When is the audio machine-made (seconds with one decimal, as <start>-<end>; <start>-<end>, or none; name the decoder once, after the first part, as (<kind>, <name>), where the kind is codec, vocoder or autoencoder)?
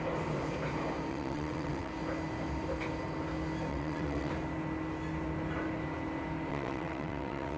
1.1-1.9 (vocoder, WaveNeXt); 3.7-4.3; 6.5-7.6